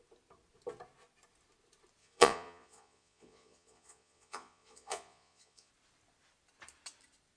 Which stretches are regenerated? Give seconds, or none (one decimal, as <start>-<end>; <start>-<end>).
2.0-5.7